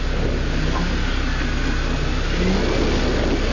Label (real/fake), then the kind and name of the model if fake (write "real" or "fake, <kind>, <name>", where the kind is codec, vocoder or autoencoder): real